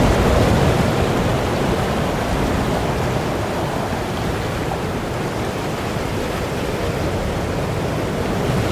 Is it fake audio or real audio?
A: real